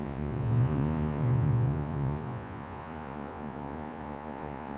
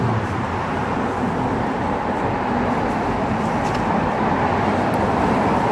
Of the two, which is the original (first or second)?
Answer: second